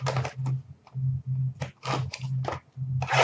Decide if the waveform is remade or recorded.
recorded